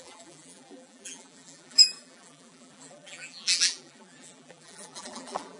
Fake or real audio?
fake